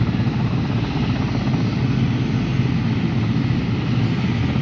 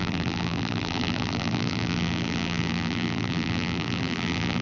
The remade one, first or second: second